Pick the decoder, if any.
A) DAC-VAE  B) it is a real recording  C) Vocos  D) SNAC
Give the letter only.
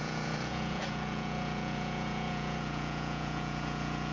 C